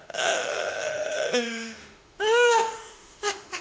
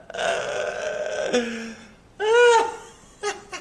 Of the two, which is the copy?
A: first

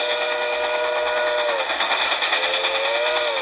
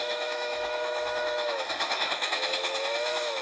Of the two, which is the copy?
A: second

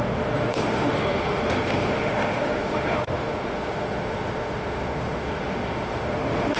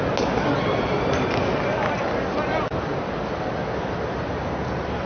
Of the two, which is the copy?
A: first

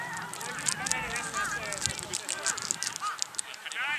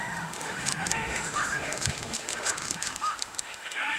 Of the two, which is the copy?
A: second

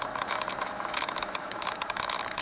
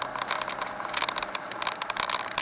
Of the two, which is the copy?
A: first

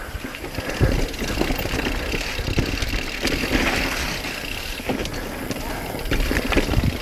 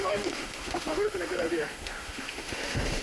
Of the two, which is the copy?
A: second